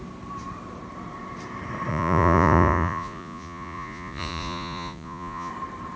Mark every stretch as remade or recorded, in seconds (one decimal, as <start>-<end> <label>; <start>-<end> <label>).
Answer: 0.0-1.9 recorded; 1.9-5.5 remade; 5.5-6.0 recorded